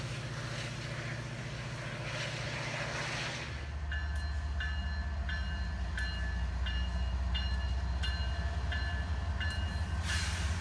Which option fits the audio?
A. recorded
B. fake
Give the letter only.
A